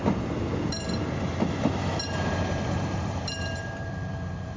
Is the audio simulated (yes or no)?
yes